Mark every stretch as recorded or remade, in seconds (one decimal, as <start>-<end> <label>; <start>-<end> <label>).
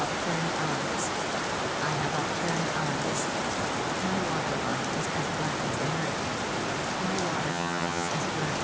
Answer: 0.0-7.5 recorded; 7.5-8.1 remade; 8.1-8.6 recorded